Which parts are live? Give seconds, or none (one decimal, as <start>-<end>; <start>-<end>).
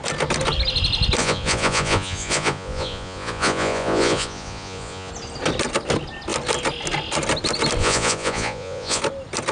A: 0.0-1.2; 5.1-7.8; 9.0-9.5